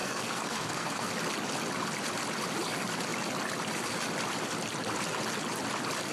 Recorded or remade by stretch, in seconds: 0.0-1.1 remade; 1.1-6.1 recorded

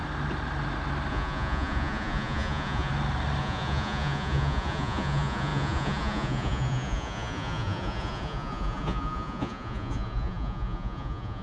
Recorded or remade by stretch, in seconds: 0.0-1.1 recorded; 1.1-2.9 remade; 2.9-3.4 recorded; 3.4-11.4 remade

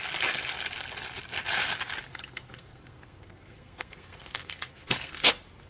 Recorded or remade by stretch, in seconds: 0.0-2.1 recorded; 2.1-5.3 remade; 5.3-5.7 recorded